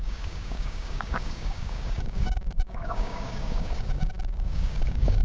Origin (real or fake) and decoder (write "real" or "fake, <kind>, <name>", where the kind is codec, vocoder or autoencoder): fake, codec, DAC